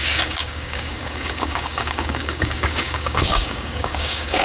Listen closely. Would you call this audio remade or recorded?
remade